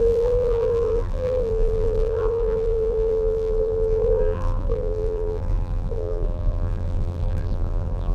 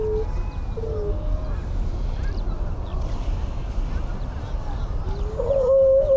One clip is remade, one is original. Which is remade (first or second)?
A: first